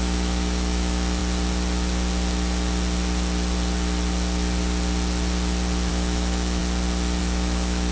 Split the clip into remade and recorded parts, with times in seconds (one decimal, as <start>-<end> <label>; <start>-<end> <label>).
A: 0.0-1.2 remade; 1.2-5.9 recorded; 5.9-6.6 remade; 6.6-7.2 recorded; 7.2-7.9 remade